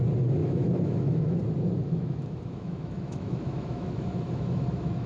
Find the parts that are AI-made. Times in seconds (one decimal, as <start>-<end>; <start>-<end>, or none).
0.4-1.4; 1.8-5.1